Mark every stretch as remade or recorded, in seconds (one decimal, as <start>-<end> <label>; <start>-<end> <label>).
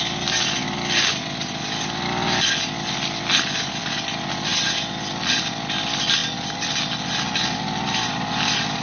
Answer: 0.0-8.8 recorded